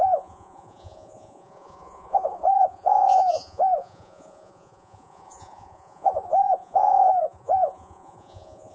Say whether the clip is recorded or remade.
remade